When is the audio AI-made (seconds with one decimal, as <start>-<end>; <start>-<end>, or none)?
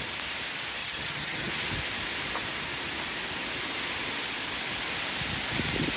0.8-1.5